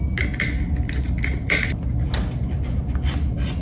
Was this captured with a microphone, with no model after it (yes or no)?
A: yes